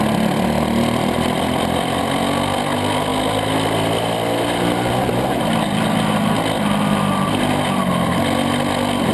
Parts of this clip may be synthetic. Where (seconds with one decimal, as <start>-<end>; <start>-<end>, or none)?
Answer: none